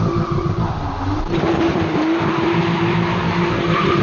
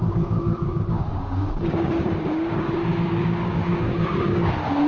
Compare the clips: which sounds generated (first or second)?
second